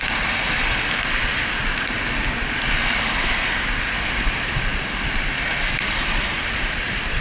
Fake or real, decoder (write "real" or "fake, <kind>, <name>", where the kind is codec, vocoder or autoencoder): real